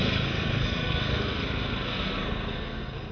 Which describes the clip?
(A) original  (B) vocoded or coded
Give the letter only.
B